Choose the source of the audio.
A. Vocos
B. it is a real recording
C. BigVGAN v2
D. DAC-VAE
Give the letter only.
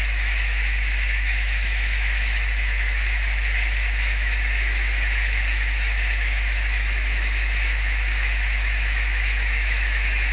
D